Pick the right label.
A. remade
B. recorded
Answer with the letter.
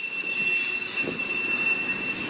B